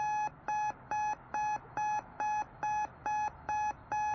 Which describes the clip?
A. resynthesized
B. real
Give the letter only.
B